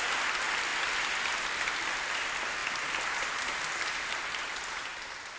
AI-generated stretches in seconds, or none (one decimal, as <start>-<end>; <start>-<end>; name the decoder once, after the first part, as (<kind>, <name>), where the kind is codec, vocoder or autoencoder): none